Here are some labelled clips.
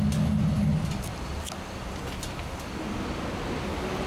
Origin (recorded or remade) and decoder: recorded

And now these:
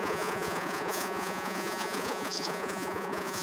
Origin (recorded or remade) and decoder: remade, vocoder, Vocos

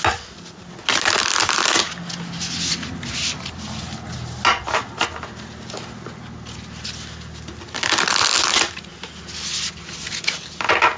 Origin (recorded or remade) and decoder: recorded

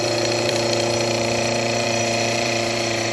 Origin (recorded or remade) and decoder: remade, vocoder, BigVGAN v2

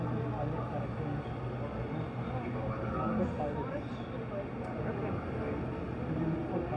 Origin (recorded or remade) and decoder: recorded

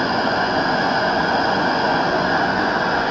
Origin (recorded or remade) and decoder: remade, vocoder, Vocos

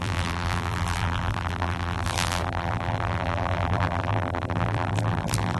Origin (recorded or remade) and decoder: remade, vocoder, BigVGAN v2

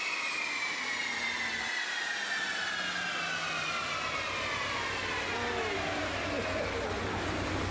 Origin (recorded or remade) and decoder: recorded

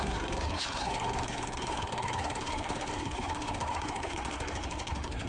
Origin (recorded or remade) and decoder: remade, codec, SNAC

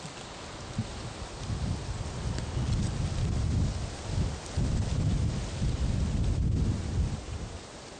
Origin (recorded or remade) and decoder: recorded